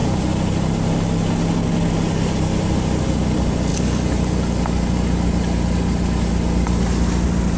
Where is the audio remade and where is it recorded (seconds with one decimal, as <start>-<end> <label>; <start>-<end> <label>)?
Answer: 0.0-7.6 recorded